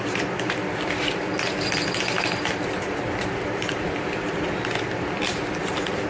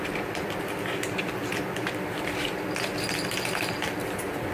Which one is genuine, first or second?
second